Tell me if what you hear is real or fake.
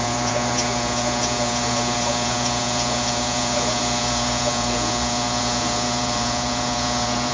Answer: fake